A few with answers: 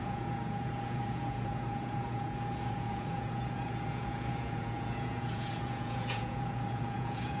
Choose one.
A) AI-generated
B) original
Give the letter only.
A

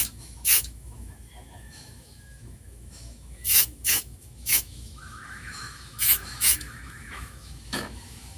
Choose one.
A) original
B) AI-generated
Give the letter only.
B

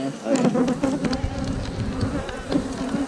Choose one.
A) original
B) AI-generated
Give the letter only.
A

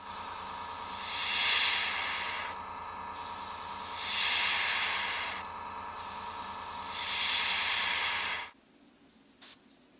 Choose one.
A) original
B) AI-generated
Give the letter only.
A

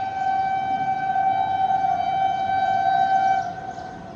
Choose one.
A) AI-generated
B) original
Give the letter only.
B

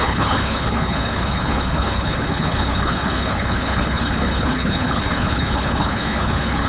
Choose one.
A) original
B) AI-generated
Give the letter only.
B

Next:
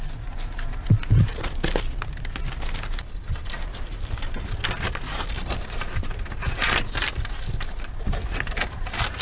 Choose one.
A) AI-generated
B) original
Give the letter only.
B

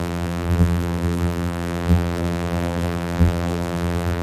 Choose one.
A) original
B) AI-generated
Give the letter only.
B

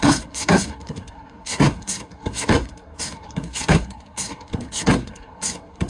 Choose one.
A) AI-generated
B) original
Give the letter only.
A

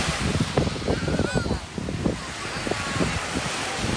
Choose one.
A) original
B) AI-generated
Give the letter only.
A